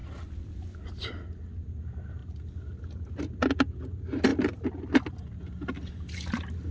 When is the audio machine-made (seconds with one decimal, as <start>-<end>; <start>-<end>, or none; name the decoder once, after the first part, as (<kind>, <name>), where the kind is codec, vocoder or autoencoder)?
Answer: none